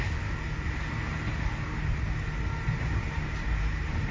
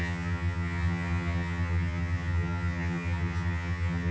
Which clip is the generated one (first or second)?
second